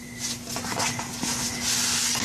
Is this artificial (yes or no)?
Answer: no